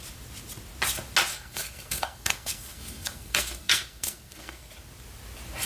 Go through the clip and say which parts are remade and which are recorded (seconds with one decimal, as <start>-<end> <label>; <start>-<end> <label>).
0.0-1.3 recorded; 1.3-4.7 remade; 4.7-5.7 recorded